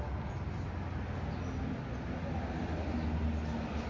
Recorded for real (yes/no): yes